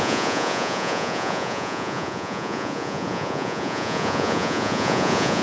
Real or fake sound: fake